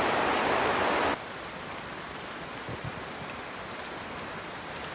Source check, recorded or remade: recorded